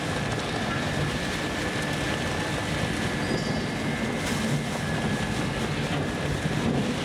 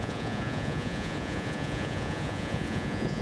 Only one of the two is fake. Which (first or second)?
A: second